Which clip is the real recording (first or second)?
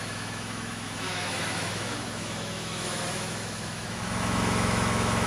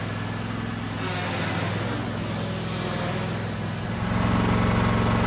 second